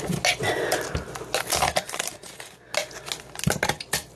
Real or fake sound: real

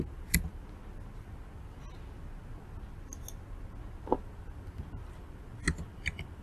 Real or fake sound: real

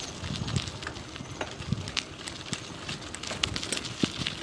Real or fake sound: real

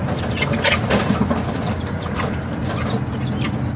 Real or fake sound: real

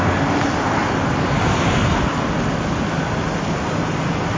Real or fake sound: real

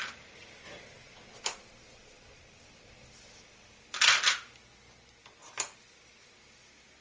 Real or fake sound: real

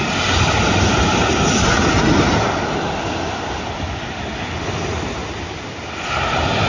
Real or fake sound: real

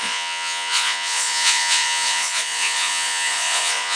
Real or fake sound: fake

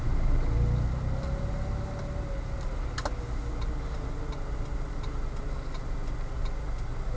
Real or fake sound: real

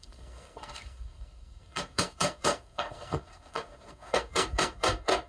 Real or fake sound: fake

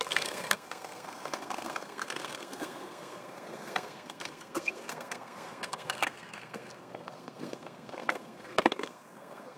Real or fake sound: fake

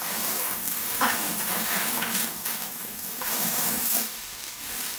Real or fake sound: fake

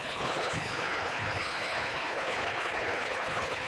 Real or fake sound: fake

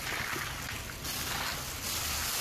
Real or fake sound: real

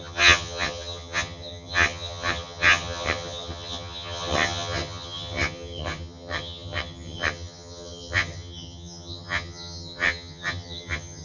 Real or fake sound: fake